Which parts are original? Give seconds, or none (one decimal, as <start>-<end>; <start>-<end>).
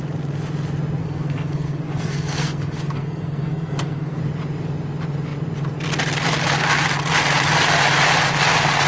0.0-1.0; 4.2-8.9